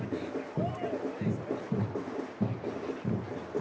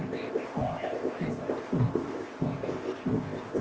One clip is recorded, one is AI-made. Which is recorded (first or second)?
first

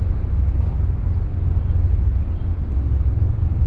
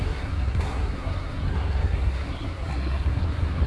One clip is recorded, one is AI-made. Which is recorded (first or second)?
first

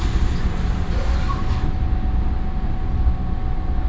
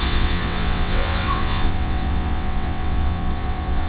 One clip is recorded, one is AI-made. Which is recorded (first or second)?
first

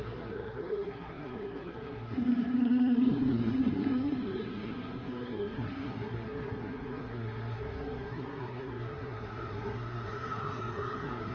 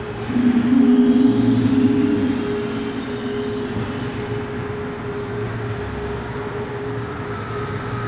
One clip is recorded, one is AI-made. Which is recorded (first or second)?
second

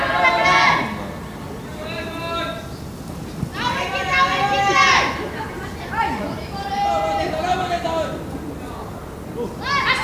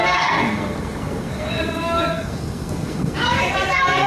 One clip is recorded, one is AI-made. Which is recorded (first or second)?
first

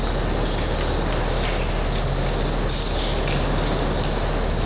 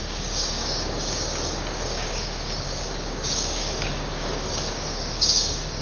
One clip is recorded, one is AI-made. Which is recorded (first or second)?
first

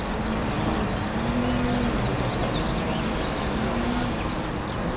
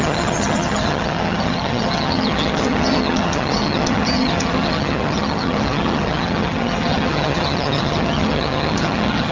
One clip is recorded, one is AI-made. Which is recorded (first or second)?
first